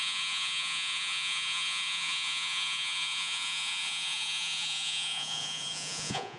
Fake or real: fake